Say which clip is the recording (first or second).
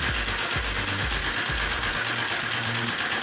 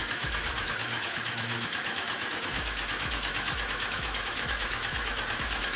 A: first